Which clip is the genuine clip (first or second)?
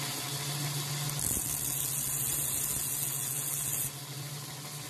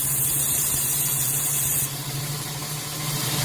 first